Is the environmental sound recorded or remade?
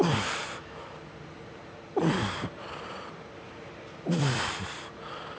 remade